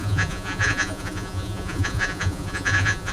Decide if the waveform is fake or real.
fake